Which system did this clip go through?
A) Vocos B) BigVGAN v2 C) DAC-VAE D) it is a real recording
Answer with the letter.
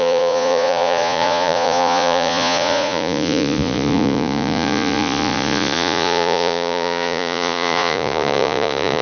A